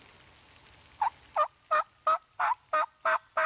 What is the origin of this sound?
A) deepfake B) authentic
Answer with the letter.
B